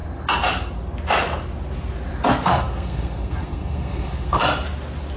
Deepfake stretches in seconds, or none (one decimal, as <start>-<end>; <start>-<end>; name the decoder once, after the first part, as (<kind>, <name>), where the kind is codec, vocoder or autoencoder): 2.5-4.4 (codec, SNAC)